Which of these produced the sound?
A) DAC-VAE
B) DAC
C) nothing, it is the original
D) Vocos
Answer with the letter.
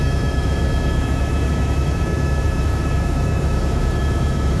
A